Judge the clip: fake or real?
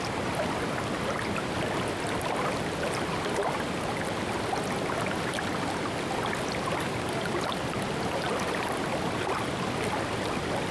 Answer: real